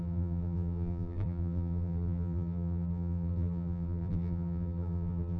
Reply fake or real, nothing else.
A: fake